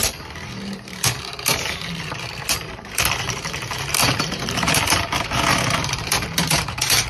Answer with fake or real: fake